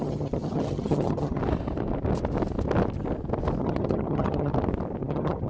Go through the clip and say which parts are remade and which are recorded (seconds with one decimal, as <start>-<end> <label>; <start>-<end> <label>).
0.0-1.4 remade; 1.4-3.6 recorded; 3.6-4.5 remade; 4.5-5.0 recorded; 5.0-5.5 remade